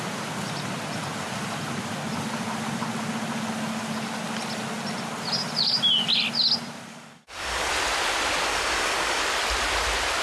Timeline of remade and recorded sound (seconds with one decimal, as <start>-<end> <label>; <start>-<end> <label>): 0.0-6.9 recorded; 6.9-7.7 remade; 7.7-8.5 recorded; 8.5-9.2 remade; 9.2-10.2 recorded